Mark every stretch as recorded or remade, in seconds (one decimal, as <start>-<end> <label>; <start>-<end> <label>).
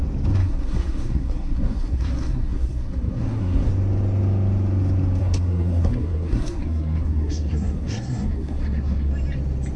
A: 0.0-0.4 recorded; 0.4-3.7 remade; 3.7-5.2 recorded; 5.2-9.1 remade; 9.1-9.8 recorded